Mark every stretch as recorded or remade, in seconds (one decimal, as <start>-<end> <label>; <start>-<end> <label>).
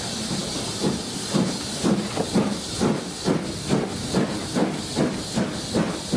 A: 0.0-6.2 recorded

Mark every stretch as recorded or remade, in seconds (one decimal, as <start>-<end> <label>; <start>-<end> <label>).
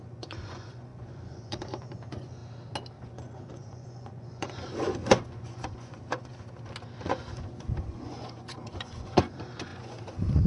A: 0.0-2.4 remade; 2.4-3.0 recorded; 3.0-6.3 remade; 6.3-7.0 recorded; 7.0-10.5 remade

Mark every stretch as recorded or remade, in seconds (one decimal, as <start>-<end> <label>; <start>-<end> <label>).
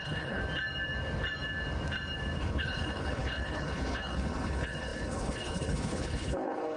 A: 0.0-0.4 remade; 0.4-2.4 recorded; 2.4-6.8 remade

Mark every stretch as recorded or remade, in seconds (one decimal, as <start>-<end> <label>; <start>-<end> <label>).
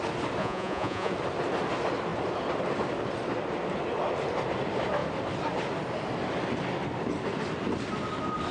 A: 0.0-0.4 recorded; 0.4-1.1 remade; 1.1-8.5 recorded